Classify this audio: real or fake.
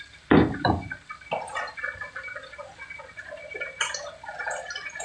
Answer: real